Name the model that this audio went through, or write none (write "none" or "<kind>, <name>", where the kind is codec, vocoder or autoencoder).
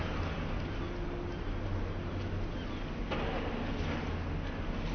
none